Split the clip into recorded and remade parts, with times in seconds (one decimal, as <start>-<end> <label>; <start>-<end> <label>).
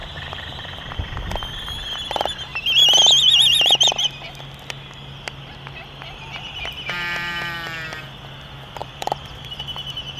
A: 0.0-0.8 remade; 0.8-2.8 recorded; 2.8-4.1 remade; 4.1-8.8 recorded; 8.8-9.6 remade; 9.6-10.2 recorded